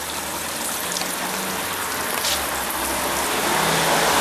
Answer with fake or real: real